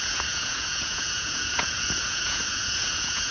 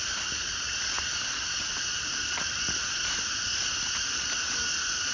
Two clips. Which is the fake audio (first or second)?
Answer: first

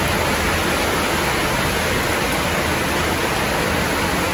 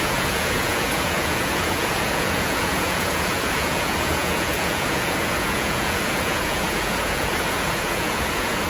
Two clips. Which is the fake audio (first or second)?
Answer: second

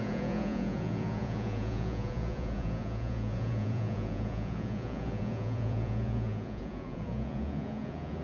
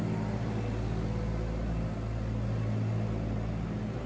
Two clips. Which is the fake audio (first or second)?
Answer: first